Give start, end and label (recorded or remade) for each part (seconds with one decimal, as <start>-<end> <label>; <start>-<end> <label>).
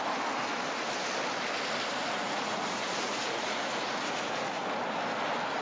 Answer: 0.0-2.0 recorded; 2.0-4.6 remade; 4.6-5.6 recorded